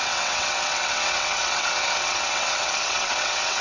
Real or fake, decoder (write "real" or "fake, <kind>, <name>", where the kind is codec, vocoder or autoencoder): fake, vocoder, WaveNeXt